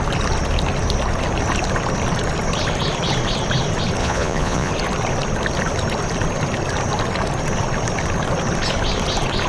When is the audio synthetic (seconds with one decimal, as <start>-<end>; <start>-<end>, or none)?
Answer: 4.0-4.7